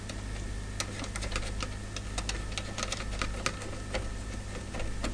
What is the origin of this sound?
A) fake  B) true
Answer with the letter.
B